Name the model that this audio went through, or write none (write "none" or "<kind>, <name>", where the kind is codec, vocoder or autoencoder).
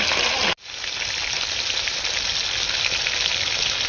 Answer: none